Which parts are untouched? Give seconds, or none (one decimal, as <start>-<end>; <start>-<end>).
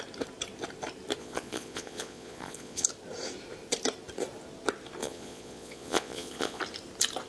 0.0-1.2; 2.9-5.0; 6.6-7.3